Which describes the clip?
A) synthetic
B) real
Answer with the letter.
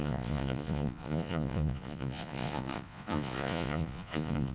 A